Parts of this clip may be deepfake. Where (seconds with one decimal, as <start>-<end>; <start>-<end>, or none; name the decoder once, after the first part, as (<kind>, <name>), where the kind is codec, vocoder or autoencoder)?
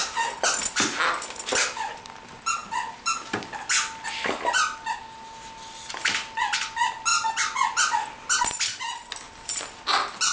none